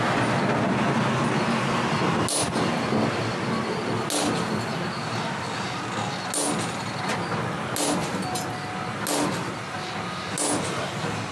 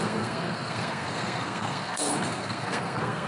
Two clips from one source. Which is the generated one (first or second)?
second